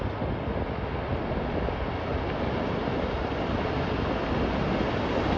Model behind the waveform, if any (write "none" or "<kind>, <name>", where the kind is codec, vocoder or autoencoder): none